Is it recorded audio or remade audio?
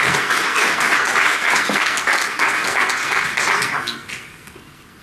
remade